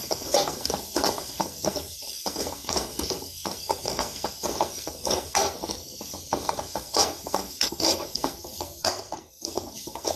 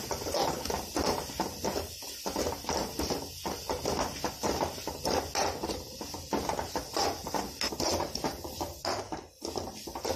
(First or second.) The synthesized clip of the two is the first